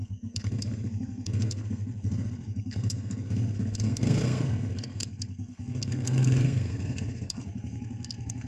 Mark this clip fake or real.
fake